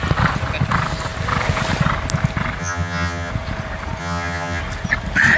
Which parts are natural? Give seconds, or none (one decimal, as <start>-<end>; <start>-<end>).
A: 0.0-2.6; 3.3-4.0; 4.6-5.4